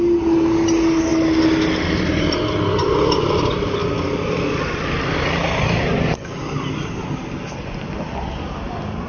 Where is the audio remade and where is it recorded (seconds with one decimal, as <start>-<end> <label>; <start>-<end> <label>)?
0.0-9.1 recorded